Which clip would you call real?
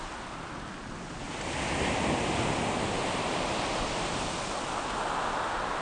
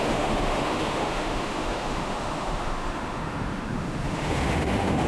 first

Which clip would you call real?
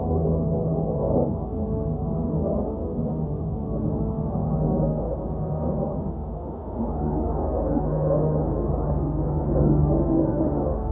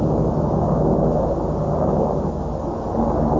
second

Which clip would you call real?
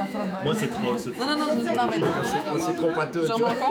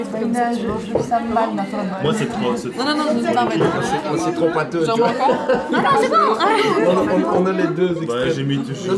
second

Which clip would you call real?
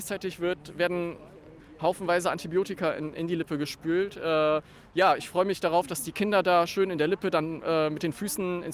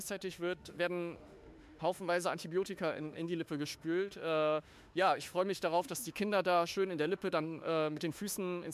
first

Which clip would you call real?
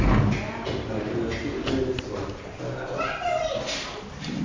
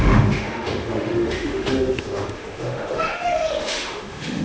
first